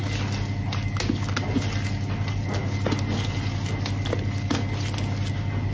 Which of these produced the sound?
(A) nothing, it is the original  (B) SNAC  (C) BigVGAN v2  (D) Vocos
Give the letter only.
A